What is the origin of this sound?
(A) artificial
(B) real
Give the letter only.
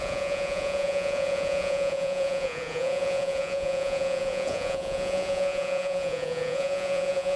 A